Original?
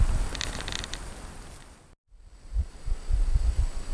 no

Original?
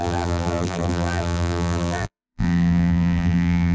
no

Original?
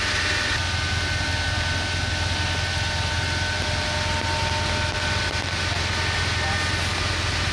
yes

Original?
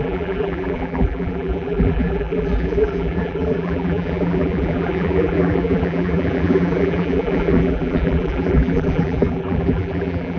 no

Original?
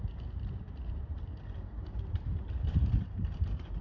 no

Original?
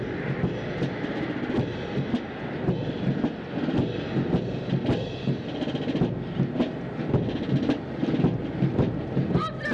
yes